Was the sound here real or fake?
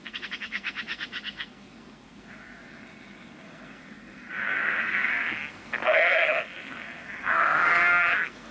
fake